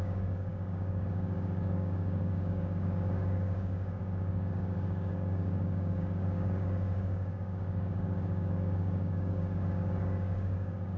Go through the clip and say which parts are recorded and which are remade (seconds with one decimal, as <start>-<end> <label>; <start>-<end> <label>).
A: 0.0-11.0 remade